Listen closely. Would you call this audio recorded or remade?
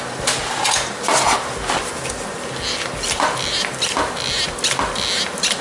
recorded